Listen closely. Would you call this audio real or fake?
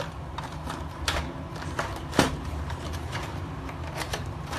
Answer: fake